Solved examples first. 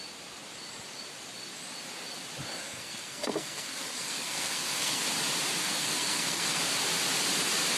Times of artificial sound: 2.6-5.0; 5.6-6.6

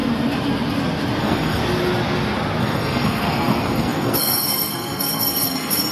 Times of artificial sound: 1.2-1.6; 2.6-5.9

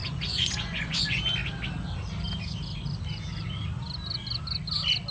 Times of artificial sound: 0.0-1.2

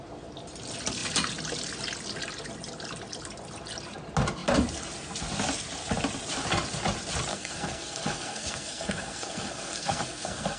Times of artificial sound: 7.3-10.6

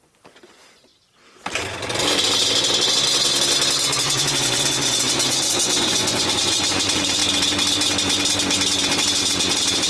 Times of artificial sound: 0.0-0.9; 3.8-7.2; 9.2-9.9

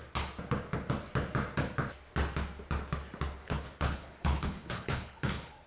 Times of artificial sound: 3.4-5.7

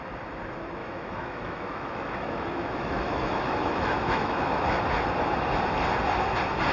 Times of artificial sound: 0.8-4.8

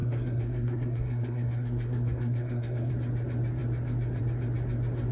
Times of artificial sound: 0.0-2.9